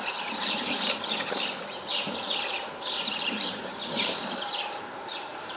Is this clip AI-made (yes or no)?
yes